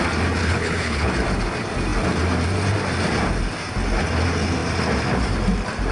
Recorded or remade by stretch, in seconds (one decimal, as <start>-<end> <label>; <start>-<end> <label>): 0.0-0.4 recorded; 0.4-1.1 remade; 1.1-5.9 recorded

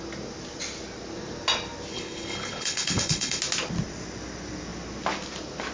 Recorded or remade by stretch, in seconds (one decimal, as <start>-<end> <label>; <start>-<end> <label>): 0.0-1.9 recorded; 1.9-3.4 remade; 3.4-5.7 recorded

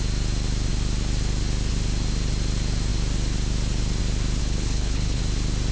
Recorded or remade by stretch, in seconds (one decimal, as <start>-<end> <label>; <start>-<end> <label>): 0.0-4.4 recorded; 4.4-5.2 remade; 5.2-5.7 recorded

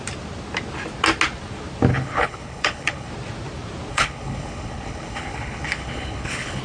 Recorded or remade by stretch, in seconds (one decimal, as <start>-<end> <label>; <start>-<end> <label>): 0.0-1.9 recorded; 1.9-3.1 remade; 3.1-3.9 recorded; 3.9-6.6 remade

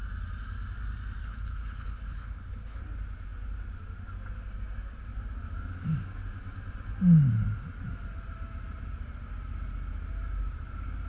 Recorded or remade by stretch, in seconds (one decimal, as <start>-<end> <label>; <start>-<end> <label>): 0.0-1.2 recorded; 1.2-2.8 remade; 2.8-11.1 recorded